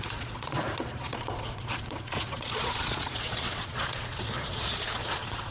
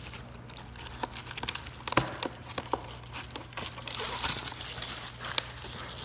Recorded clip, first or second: second